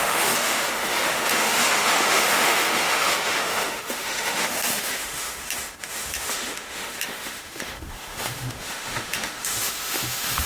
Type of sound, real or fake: fake